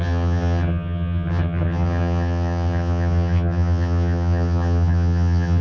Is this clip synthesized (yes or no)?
yes